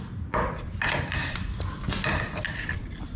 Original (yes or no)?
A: yes